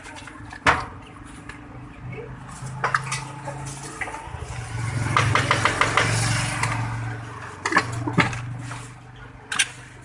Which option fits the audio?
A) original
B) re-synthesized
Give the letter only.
A